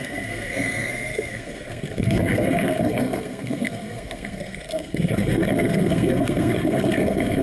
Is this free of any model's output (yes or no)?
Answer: no